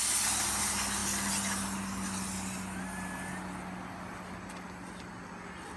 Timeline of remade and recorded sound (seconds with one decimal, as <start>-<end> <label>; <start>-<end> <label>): 0.0-5.8 recorded